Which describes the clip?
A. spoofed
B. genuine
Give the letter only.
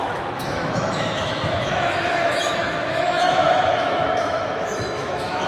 A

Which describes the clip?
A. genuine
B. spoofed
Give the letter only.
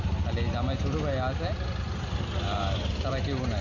A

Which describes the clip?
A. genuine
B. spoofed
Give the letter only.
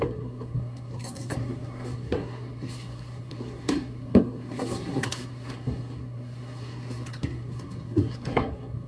B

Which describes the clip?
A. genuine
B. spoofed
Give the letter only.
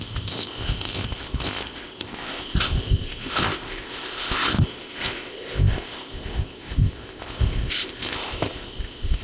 B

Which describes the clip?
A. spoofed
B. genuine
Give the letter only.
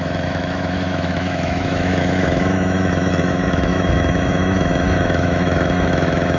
A